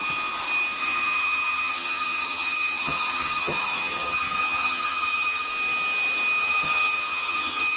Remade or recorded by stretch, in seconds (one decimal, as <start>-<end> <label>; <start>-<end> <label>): 0.0-0.8 recorded; 0.8-5.5 remade; 5.5-6.4 recorded; 6.4-7.8 remade